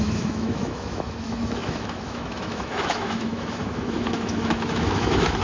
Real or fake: fake